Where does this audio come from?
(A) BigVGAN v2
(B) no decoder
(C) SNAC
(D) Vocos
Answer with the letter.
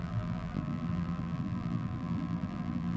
A